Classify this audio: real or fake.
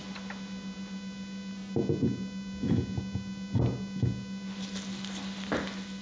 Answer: real